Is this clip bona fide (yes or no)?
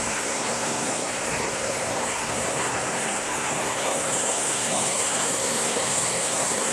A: no